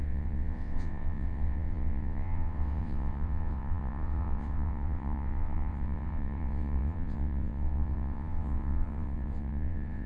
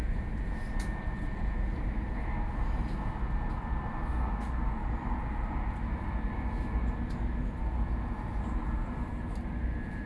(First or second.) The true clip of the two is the second